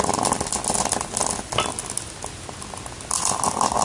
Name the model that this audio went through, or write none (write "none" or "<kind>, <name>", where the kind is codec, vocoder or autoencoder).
none